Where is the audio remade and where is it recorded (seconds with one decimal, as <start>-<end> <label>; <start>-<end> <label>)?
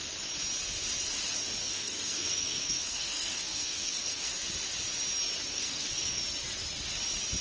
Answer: 0.0-1.6 recorded; 1.6-4.3 remade; 4.3-5.5 recorded; 5.5-6.2 remade; 6.2-7.4 recorded